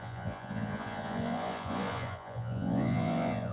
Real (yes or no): no